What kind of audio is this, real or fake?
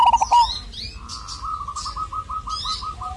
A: real